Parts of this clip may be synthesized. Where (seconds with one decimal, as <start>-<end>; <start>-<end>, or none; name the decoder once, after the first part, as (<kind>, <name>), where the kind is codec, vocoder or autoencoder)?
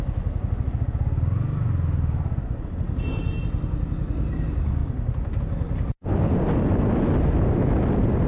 4.8-5.4 (vocoder, BigVGAN v2)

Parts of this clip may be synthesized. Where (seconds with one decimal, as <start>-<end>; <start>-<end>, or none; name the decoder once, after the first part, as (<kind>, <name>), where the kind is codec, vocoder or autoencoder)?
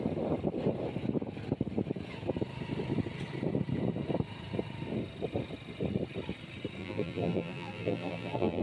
6.8-8.6 (vocoder, BigVGAN v2)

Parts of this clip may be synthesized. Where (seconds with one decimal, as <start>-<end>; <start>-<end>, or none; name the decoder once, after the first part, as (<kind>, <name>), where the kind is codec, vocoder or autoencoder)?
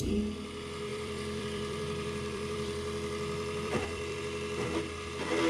0.9-4.2 (vocoder, BigVGAN v2)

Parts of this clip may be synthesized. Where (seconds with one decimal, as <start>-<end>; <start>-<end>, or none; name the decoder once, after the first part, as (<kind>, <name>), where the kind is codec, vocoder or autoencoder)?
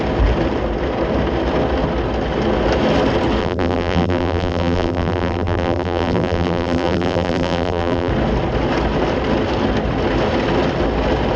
3.4-8.1 (vocoder, BigVGAN v2)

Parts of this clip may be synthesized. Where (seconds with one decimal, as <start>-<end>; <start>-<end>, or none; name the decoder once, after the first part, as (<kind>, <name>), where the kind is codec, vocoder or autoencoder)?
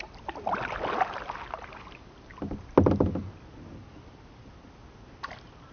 3.2-4.5 (vocoder, BigVGAN v2)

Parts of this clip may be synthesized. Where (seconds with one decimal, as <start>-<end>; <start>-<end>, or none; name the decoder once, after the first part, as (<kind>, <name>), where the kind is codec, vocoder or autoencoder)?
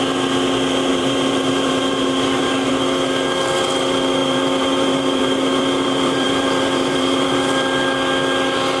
0.9-2.7 (vocoder, BigVGAN v2); 4.2-7.5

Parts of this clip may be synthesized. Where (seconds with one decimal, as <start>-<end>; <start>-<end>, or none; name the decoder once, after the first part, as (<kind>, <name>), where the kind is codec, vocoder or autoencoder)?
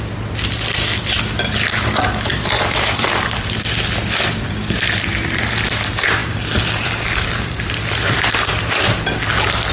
2.3-5.6 (vocoder, BigVGAN v2); 6.2-8.5